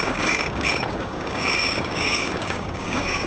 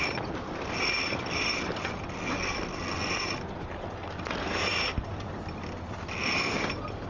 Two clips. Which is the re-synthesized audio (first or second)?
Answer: first